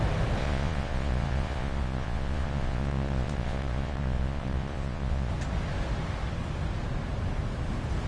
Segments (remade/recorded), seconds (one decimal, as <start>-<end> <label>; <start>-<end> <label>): 0.0-0.4 recorded; 0.4-5.3 remade; 5.3-8.1 recorded